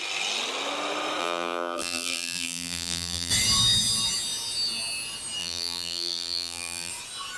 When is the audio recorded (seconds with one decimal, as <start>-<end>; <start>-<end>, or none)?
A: 0.0-1.2; 3.3-5.4; 6.9-7.4